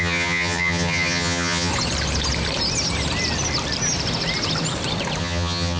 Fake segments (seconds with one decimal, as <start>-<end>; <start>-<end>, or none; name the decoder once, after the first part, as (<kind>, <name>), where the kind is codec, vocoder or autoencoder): 0.0-1.7 (vocoder, HiFi-GAN); 5.2-5.8

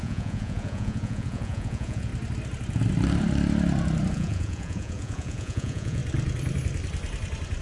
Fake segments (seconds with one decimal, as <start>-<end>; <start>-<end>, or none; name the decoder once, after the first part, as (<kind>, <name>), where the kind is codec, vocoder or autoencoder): 0.0-2.1 (vocoder, Vocos); 4.1-6.0

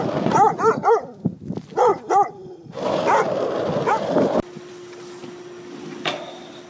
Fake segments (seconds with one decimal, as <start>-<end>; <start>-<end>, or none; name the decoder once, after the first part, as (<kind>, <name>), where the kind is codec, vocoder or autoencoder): 1.9-4.7 (vocoder, BigVGAN v2)

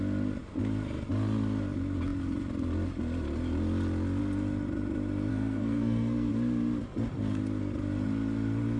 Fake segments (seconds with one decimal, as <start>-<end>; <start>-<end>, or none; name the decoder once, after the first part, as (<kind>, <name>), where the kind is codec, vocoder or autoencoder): 5.3-6.3 (codec, SNAC)

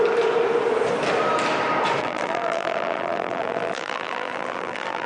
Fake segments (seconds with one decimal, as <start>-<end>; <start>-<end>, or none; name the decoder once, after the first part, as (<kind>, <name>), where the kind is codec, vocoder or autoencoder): 2.0-5.1 (vocoder, BigVGAN v2)

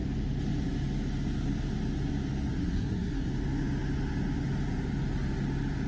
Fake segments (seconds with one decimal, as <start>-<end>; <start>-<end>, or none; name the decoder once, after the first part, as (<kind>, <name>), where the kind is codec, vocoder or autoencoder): 2.6-3.3 (codec, SNAC)

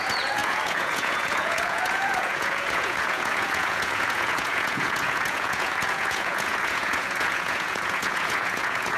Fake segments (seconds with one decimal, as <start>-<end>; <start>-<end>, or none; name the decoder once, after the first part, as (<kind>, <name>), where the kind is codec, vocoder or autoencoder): 0.0-9.0 (vocoder, Vocos)

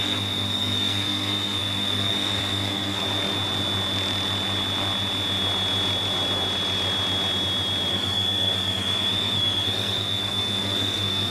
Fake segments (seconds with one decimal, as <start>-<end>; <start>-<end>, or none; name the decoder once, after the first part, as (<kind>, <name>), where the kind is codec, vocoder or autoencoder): 0.0-3.0 (codec, SNAC); 7.9-11.3